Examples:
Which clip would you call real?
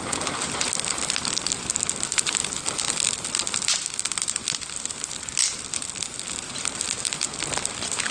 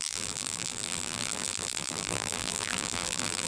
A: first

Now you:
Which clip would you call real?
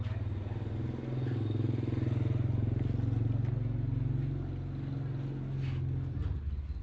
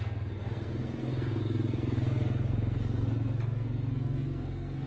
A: first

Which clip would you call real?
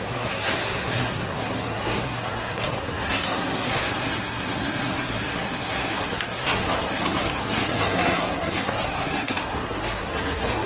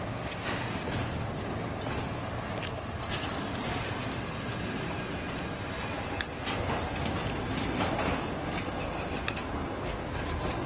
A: second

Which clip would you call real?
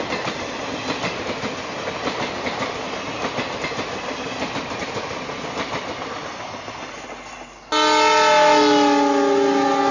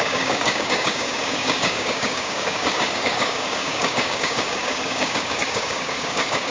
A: first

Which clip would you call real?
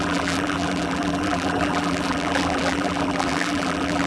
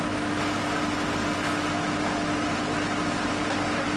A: second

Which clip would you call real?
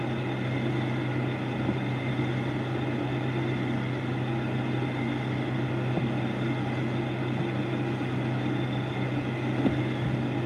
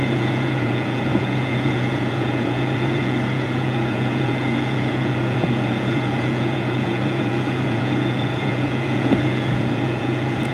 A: first